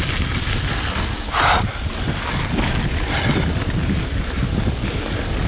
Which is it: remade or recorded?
recorded